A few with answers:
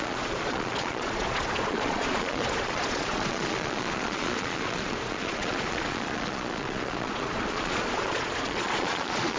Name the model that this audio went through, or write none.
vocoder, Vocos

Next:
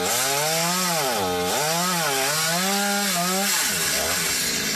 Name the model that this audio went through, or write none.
none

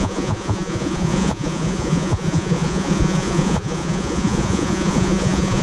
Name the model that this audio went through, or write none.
vocoder, Vocos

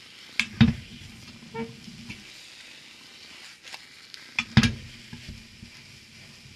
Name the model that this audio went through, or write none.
none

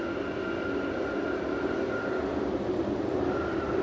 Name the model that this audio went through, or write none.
none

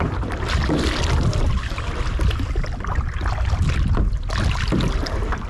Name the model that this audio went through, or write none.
none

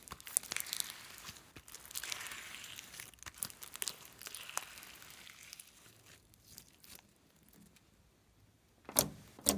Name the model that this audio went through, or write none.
none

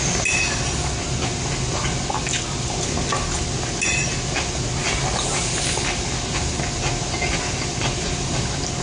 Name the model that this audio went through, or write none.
none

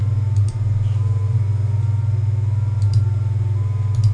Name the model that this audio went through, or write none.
none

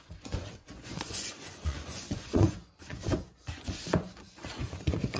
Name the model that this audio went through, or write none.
vocoder, Vocos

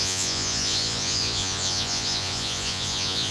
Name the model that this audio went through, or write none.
vocoder, Vocos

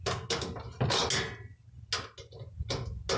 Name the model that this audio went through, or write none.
none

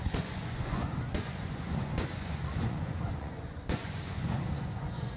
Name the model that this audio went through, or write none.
vocoder, Vocos